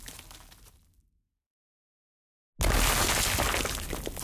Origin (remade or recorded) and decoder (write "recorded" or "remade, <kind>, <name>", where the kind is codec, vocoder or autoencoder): recorded